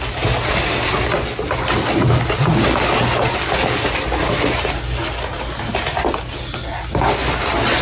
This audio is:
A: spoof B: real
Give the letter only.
B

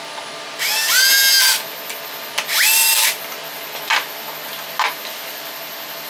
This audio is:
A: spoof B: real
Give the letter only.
B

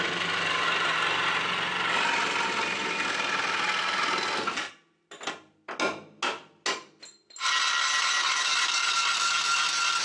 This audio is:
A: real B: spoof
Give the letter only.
A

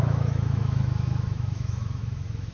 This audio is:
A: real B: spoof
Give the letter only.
B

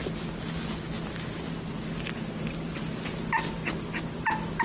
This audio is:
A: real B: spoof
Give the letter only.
A